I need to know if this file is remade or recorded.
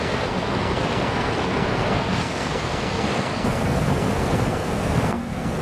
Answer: remade